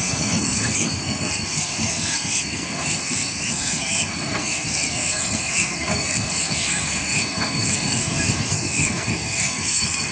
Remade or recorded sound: remade